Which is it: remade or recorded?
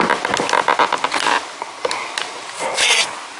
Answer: recorded